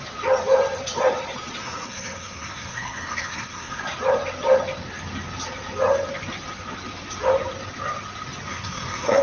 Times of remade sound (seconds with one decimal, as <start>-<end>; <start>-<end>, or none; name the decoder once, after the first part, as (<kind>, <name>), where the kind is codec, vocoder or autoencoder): 1.6-3.8 (codec, SNAC); 8.5-9.2